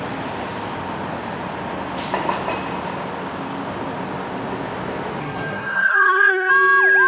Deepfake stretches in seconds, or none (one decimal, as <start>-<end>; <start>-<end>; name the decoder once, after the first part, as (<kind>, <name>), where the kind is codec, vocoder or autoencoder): 5.2-6.5 (codec, SNAC)